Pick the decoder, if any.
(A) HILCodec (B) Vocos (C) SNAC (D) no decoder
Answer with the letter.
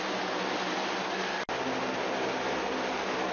D